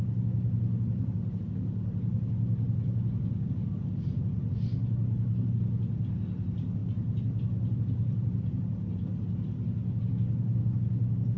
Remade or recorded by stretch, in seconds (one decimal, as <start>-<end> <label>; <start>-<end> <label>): 0.0-11.4 recorded